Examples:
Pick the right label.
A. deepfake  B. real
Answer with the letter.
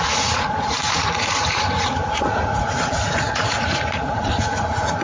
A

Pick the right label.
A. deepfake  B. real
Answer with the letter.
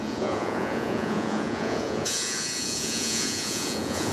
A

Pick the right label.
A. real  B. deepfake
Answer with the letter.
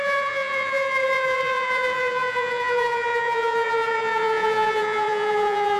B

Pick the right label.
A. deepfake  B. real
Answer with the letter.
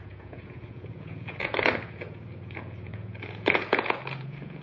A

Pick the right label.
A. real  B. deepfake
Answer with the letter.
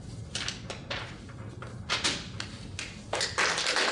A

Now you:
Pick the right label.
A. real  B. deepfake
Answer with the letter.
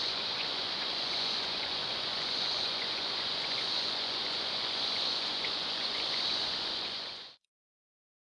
B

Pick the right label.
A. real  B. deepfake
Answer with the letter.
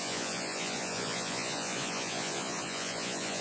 B